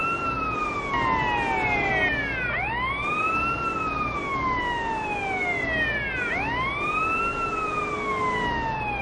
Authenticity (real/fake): real